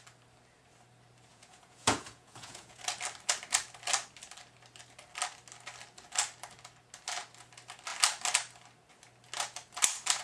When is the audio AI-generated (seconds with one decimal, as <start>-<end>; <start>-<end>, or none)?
1.3-2.8